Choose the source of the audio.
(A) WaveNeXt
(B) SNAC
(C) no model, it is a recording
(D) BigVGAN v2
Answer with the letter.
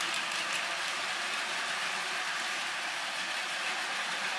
C